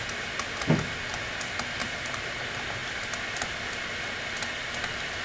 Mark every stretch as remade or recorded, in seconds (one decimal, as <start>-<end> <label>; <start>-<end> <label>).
0.0-1.8 recorded; 1.8-2.3 remade; 2.3-5.2 recorded